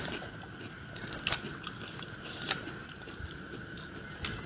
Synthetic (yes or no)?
no